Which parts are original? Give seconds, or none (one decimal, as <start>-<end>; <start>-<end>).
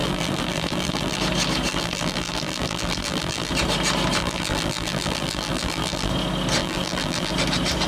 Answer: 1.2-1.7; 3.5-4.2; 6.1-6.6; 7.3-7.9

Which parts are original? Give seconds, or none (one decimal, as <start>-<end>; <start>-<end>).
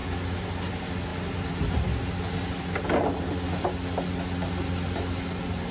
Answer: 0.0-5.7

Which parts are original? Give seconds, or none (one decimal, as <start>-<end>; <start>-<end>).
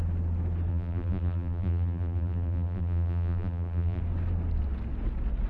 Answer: 0.0-0.7; 4.0-5.5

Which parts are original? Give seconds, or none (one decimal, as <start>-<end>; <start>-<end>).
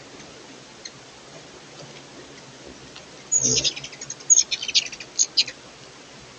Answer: 0.0-6.4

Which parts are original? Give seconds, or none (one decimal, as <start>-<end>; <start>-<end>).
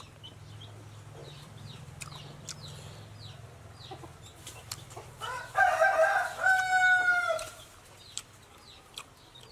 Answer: 0.0-1.2; 1.8-4.3; 5.8-9.5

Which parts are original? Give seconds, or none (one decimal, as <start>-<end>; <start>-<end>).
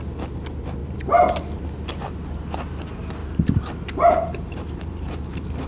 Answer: 0.0-0.8; 1.6-3.2